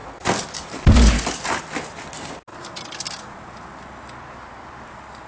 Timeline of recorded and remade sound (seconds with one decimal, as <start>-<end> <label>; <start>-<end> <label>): 0.0-5.3 recorded